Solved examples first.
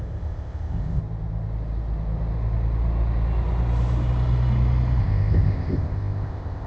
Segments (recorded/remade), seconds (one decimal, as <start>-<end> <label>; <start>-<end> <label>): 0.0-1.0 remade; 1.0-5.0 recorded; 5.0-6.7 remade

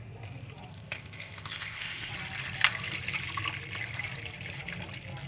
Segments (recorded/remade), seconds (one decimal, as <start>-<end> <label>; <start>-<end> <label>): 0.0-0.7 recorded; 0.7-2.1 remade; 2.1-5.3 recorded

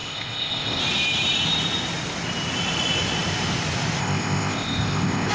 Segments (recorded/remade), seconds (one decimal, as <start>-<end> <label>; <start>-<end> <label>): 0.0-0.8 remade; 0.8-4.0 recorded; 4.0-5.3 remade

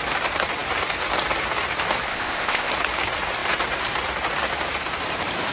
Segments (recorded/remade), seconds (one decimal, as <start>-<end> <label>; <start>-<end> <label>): 0.0-2.1 recorded; 2.1-2.7 remade; 2.7-5.5 recorded

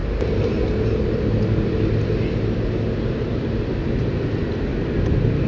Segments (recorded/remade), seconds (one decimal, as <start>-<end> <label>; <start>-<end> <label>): 0.0-5.5 recorded

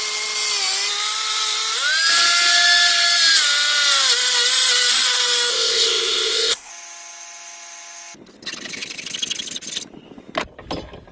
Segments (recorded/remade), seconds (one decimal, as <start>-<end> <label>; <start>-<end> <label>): 0.0-5.5 recorded; 5.5-6.7 remade; 6.7-11.1 recorded